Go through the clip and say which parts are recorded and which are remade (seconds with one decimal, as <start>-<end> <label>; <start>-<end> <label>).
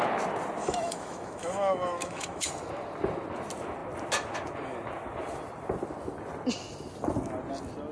0.0-0.6 recorded; 0.6-2.5 remade; 2.5-7.9 recorded